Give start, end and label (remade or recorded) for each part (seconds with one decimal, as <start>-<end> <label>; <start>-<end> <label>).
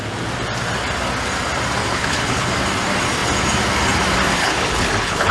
0.0-1.8 recorded; 1.8-2.5 remade; 2.5-4.4 recorded; 4.4-5.3 remade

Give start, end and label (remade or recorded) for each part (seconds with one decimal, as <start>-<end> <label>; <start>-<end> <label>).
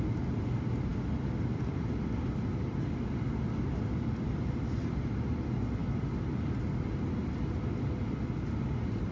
0.0-9.1 recorded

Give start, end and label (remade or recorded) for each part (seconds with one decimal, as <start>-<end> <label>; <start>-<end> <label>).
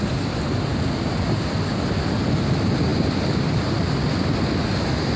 0.0-5.2 recorded